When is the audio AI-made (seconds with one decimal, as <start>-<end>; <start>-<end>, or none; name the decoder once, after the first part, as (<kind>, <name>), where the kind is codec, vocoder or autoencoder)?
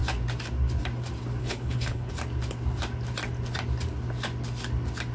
1.4-2.1 (codec, HILCodec)